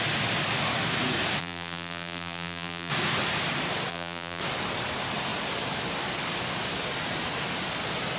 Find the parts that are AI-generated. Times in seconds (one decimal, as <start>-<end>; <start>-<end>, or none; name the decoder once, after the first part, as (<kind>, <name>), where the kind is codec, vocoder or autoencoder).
1.4-2.9 (vocoder, BigVGAN v2); 3.9-4.4